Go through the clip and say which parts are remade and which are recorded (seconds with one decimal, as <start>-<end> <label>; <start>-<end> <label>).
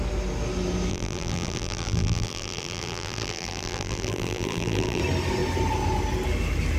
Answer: 0.0-0.9 recorded; 0.9-5.0 remade; 5.0-6.8 recorded